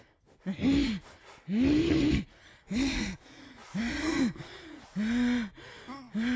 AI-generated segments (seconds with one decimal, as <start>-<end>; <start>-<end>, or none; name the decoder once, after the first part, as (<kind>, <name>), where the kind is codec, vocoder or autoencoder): none